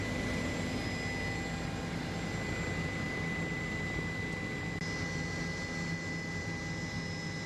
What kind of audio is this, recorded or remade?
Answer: recorded